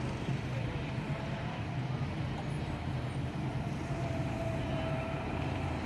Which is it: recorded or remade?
remade